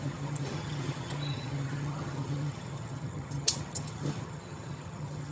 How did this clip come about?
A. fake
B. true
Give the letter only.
A